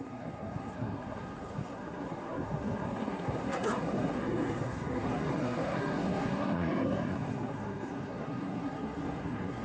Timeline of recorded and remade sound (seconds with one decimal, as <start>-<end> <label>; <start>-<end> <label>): 0.0-9.6 remade